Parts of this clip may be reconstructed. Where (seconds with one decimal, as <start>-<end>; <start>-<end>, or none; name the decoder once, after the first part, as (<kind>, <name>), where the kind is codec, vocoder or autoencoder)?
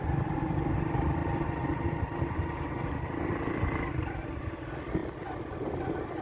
none